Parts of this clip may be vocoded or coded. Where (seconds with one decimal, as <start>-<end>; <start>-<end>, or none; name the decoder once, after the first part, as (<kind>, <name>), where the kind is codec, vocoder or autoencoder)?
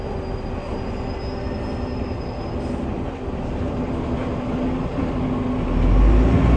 none